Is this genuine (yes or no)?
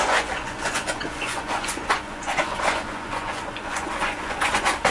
no